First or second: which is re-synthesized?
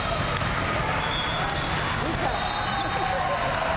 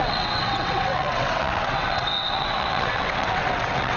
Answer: second